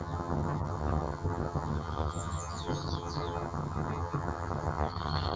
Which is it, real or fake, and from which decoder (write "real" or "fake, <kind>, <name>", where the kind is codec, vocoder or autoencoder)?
fake, vocoder, HiFi-GAN